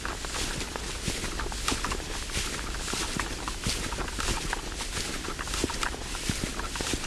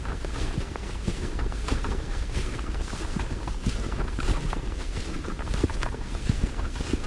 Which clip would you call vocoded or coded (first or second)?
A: second